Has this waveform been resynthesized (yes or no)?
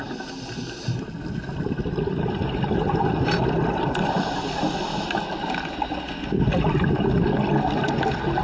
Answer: no